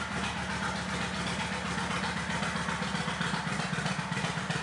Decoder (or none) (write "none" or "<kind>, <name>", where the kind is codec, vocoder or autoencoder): none